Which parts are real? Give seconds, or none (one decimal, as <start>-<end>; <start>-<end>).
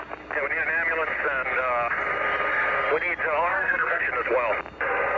0.0-3.5; 4.0-5.2